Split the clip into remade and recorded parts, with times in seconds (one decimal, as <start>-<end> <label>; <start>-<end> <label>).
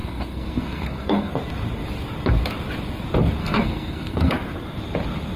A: 0.0-1.3 remade; 1.3-3.4 recorded; 3.4-4.3 remade; 4.3-5.4 recorded